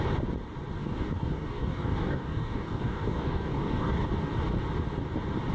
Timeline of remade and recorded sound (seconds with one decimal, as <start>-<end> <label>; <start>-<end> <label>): 0.0-0.8 recorded; 0.8-4.1 remade; 4.1-5.5 recorded